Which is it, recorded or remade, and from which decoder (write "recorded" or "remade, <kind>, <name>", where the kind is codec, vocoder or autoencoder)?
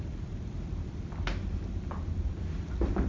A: recorded